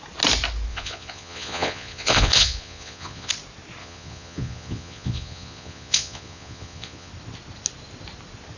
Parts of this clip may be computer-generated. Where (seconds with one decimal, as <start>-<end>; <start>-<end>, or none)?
0.7-3.3; 3.8-7.1

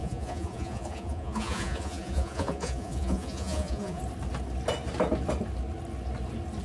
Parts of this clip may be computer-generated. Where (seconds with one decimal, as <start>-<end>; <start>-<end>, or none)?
0.0-4.0

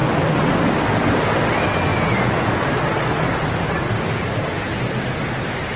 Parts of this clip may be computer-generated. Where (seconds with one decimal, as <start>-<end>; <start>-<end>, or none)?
1.9-2.6